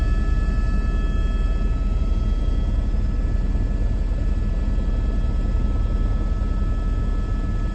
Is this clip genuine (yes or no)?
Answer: yes